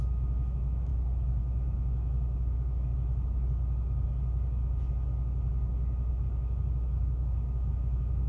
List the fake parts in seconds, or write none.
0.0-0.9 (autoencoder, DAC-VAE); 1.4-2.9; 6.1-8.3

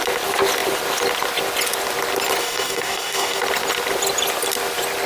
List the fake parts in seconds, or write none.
2.4-3.4 (codec, DAC)

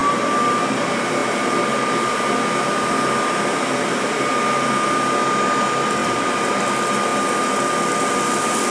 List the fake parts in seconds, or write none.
6.0-6.6 (vocoder, BigVGAN v2)